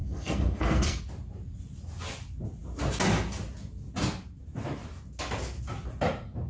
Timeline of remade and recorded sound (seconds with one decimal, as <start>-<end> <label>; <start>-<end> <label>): 0.0-1.0 remade; 1.0-6.5 recorded